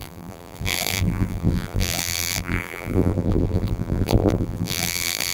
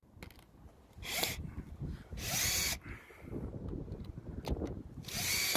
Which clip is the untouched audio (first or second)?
second